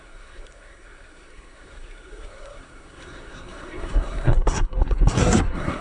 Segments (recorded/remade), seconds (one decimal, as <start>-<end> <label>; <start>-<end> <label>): 0.0-5.8 remade